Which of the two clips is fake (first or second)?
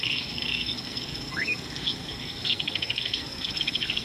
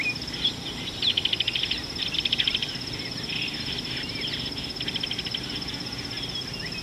first